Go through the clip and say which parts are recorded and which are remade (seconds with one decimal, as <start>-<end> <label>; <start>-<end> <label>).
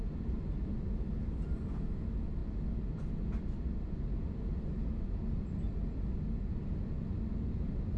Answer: 0.0-8.0 recorded